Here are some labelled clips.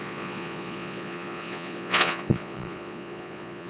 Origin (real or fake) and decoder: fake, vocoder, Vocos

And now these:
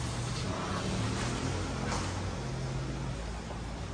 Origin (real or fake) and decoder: real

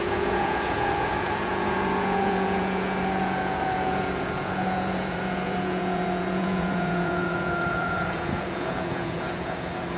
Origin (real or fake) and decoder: fake, vocoder, Vocos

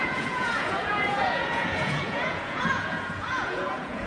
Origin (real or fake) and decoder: fake, vocoder, Vocos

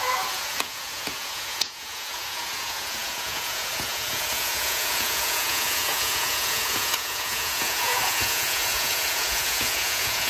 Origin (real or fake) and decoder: fake, vocoder, Vocos